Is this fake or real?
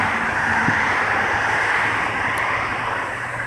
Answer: real